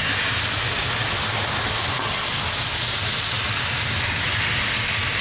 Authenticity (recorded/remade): recorded